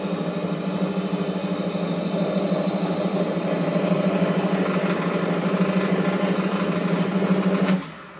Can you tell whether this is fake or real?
real